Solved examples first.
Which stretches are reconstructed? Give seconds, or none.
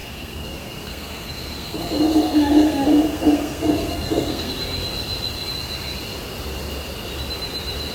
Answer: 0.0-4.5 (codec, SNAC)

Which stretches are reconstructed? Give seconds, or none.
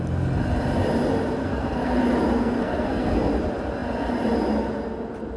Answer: 1.4-2.0 (codec, SNAC); 2.4-3.3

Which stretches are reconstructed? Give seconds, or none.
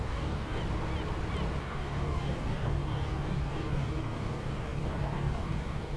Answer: 0.0-0.6 (codec, DAC); 1.6-6.0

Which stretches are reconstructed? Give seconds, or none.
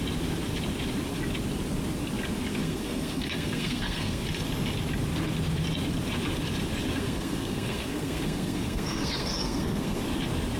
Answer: 2.5-4.2 (codec, SNAC); 6.9-10.0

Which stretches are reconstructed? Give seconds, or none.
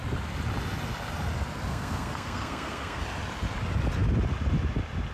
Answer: 1.7-3.0 (codec, SNAC)